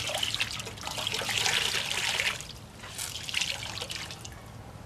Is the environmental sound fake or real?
real